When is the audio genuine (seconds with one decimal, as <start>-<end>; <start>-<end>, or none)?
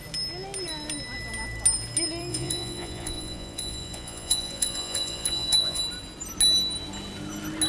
0.0-2.3; 5.8-7.7